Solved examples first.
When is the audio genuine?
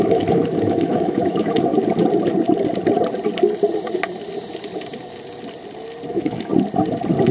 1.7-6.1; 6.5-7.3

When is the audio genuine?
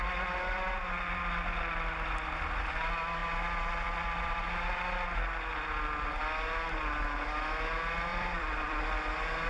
0.0-8.1; 8.8-9.5